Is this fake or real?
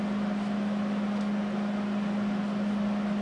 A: real